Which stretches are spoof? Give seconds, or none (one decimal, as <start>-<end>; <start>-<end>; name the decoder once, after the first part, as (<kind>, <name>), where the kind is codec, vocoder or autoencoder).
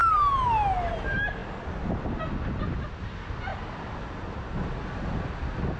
none